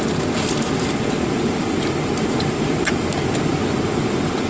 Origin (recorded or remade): remade